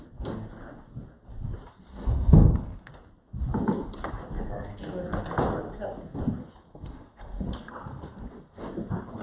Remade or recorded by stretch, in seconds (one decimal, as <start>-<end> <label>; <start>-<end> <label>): 0.0-1.9 recorded; 1.9-2.9 remade; 2.9-6.7 recorded; 6.7-8.6 remade; 8.6-9.2 recorded